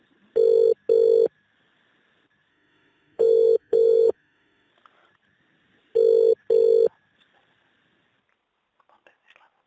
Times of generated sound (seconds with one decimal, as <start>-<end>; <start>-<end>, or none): 2.5-4.7